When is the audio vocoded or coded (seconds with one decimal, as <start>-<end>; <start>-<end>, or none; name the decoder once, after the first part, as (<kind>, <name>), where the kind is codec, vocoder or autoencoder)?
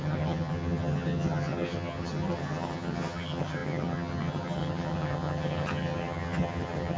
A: 0.0-7.0 (vocoder, HiFi-GAN)